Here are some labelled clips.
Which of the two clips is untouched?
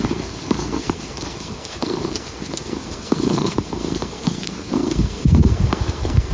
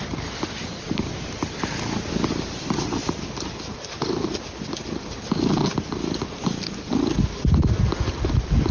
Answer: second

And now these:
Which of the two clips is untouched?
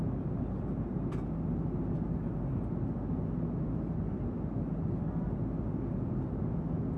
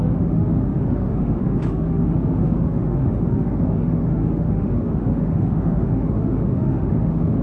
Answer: first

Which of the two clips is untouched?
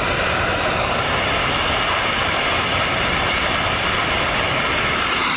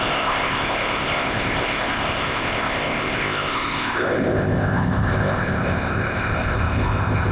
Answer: first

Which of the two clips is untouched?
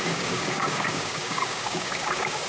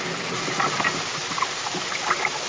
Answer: second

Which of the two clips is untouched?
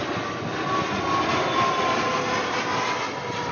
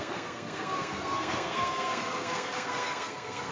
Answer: first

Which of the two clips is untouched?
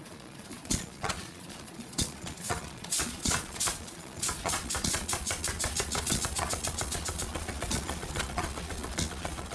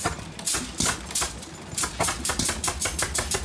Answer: second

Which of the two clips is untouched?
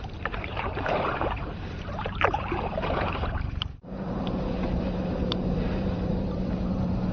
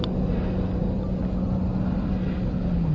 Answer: second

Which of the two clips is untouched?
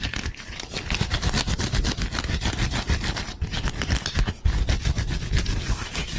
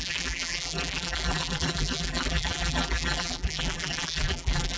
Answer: first